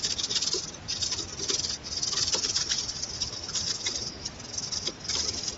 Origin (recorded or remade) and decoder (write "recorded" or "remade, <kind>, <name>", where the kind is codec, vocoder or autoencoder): recorded